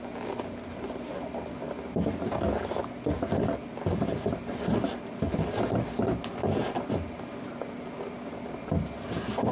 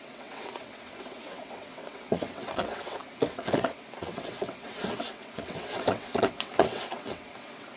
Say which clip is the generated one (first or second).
second